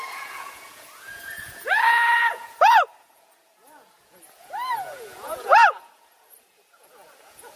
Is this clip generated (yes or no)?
yes